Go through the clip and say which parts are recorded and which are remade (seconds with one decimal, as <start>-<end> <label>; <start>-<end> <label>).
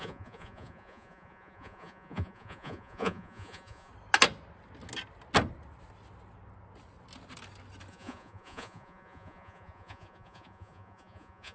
0.0-3.9 remade; 3.9-7.9 recorded; 7.9-11.5 remade